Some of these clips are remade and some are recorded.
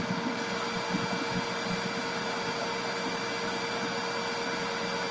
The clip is recorded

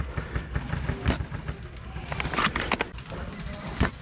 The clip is recorded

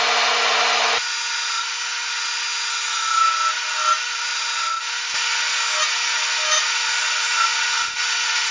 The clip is recorded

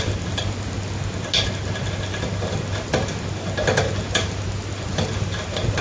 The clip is recorded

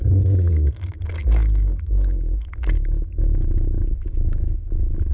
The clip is remade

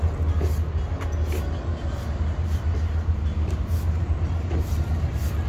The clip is recorded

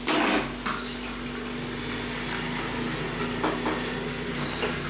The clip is recorded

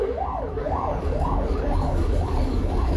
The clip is remade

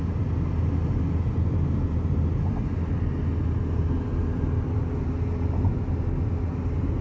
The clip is recorded